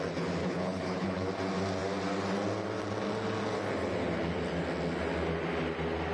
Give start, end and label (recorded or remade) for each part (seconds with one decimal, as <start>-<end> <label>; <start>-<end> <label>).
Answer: 0.0-0.4 recorded; 0.4-1.3 remade; 1.3-6.1 recorded